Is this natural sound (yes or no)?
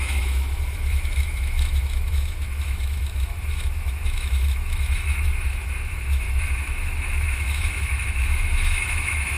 no